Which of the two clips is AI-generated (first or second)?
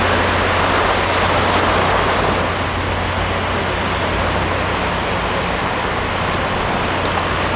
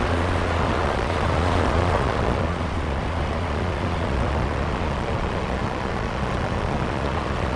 second